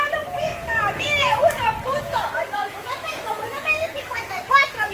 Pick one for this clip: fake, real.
fake